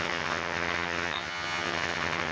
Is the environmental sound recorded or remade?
remade